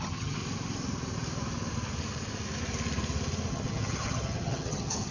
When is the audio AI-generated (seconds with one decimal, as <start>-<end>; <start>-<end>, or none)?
0.0-0.4; 3.5-5.1